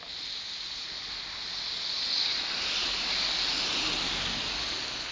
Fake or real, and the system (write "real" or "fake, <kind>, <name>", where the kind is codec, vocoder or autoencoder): real